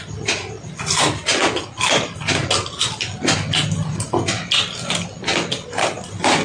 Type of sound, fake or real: real